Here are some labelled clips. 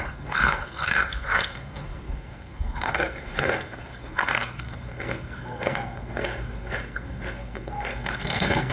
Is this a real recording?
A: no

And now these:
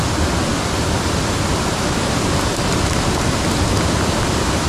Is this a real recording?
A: yes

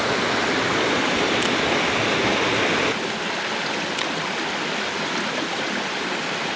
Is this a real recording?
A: yes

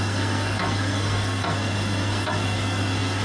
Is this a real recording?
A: no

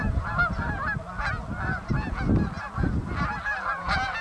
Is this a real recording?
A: yes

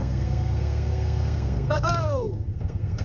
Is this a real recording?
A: no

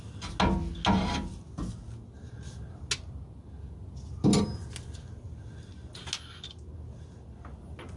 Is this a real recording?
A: yes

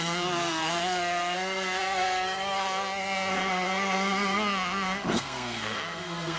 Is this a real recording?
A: no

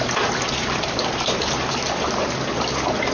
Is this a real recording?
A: yes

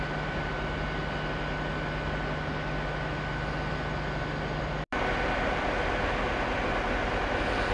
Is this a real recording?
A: yes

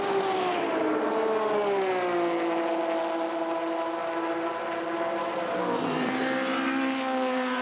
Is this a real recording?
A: yes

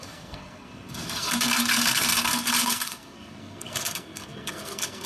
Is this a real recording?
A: no